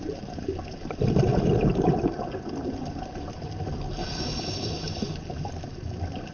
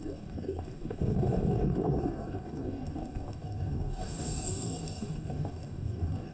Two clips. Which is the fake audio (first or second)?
second